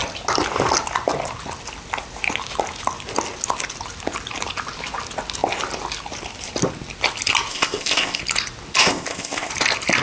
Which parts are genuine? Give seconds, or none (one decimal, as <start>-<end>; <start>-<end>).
0.0-7.5; 8.2-8.8; 9.5-10.0